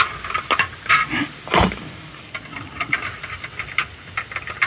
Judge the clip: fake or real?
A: real